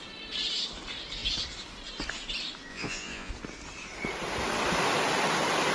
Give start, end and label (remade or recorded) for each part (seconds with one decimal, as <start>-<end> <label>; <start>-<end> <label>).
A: 0.0-2.7 recorded; 2.7-3.3 remade; 3.3-5.7 recorded